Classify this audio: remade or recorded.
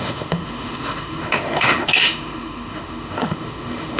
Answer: remade